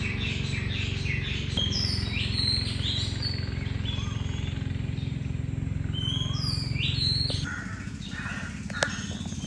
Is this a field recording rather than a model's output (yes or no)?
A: yes